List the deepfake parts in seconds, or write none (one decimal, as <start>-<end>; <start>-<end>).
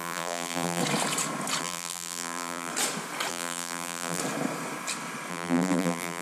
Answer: 0.0-0.8; 1.6-2.7; 3.3-4.2; 5.3-6.2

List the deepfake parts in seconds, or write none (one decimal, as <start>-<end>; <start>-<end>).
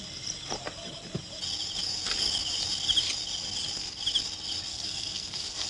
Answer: 4.7-5.7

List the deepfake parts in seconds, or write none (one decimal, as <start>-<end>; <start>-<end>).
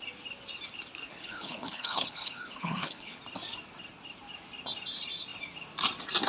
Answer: 1.1-3.2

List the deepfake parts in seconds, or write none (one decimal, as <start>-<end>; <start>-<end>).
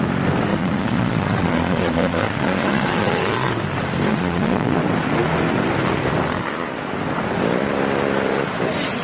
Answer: 0.5-3.5; 4.1-4.8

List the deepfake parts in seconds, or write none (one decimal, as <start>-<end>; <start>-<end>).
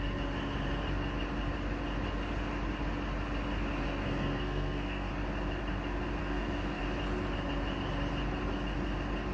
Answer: 4.0-5.1; 6.2-6.8